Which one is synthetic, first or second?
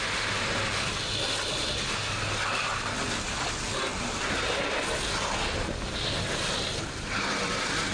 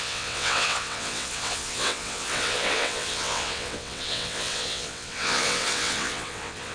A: second